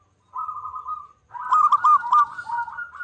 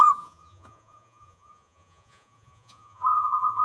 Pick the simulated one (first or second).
second